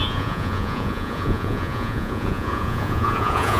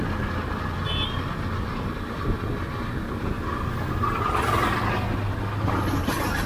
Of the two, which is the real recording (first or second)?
second